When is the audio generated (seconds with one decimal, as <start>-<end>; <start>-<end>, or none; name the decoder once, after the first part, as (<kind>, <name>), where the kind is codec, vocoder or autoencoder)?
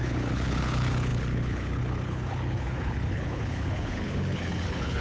0.0-5.0 (codec, HILCodec)